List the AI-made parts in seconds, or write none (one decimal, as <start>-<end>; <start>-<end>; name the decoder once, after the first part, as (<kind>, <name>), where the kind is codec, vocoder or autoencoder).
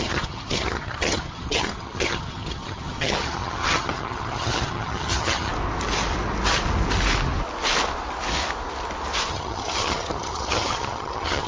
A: 0.0-5.5 (vocoder, HiFi-GAN); 9.3-11.5